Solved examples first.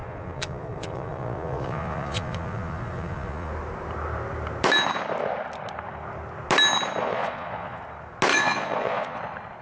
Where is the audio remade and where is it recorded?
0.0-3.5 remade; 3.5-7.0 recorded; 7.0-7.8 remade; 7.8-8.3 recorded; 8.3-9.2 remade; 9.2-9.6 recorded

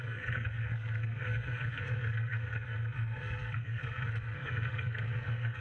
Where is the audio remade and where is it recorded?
0.0-5.6 remade

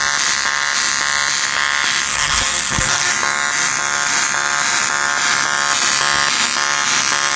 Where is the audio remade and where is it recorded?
0.0-2.1 recorded; 2.1-3.1 remade; 3.1-7.4 recorded